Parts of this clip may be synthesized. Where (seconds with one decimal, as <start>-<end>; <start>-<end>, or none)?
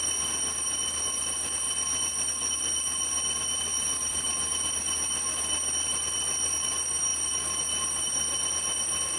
3.7-4.9